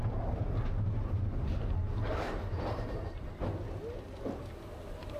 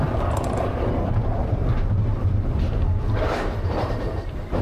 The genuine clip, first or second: first